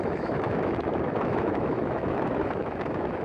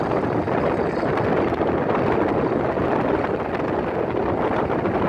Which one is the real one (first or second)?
second